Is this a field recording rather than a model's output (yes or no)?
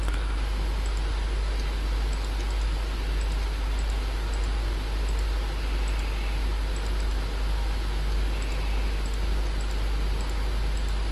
yes